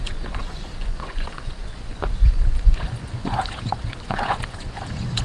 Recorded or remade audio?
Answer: remade